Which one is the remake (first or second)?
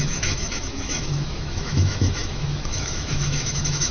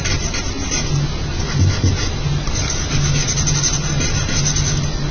first